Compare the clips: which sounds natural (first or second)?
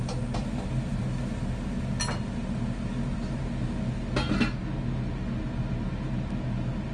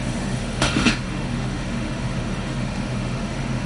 first